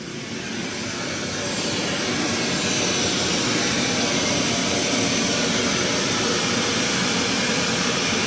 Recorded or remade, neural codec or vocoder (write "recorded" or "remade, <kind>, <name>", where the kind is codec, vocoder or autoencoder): remade, vocoder, BigVGAN v2